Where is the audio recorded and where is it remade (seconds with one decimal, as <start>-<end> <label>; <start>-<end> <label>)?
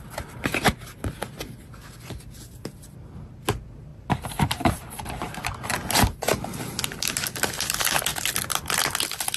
0.0-3.9 recorded; 3.9-5.4 remade; 5.4-9.4 recorded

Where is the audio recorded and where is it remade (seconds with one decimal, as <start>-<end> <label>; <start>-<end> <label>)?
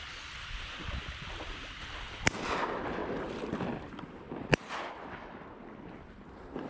0.0-6.7 recorded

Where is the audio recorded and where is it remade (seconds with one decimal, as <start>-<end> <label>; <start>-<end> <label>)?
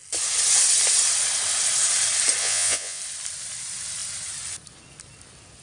0.0-2.4 recorded; 2.4-3.0 remade; 3.0-5.6 recorded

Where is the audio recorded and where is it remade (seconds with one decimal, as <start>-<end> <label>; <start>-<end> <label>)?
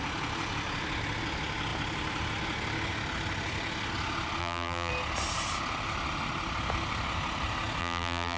0.0-4.4 recorded; 4.4-4.9 remade; 4.9-7.8 recorded; 7.8-8.4 remade